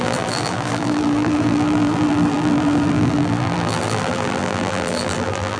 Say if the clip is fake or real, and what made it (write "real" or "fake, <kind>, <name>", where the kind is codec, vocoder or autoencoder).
fake, vocoder, BigVGAN v2